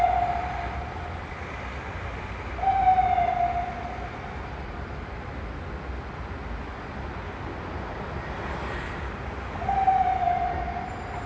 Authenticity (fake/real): real